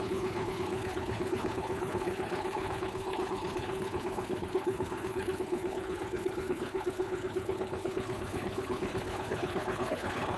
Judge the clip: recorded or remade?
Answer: remade